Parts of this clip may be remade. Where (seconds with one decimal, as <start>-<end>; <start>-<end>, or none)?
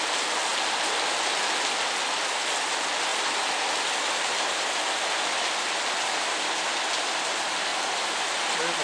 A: none